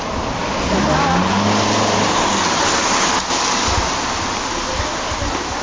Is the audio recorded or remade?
recorded